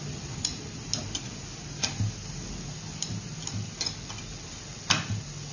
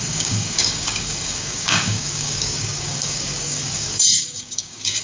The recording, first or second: first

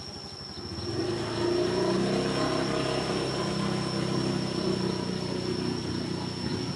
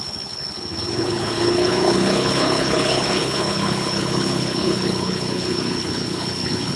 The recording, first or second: first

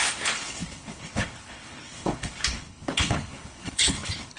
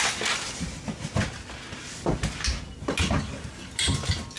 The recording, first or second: second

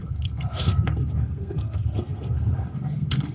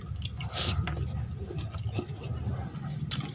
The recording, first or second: second